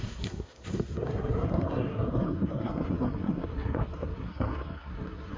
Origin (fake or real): fake